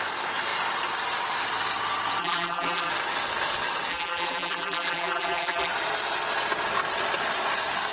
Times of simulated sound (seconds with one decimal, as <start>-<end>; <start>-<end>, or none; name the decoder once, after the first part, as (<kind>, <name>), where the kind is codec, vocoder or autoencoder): 2.2-2.9 (vocoder, BigVGAN v2); 3.9-5.7